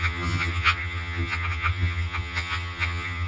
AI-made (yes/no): yes